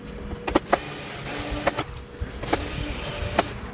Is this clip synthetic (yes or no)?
no